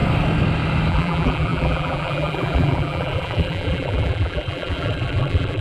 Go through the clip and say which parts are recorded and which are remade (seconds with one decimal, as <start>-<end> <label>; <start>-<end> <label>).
0.0-0.9 recorded; 0.9-5.6 remade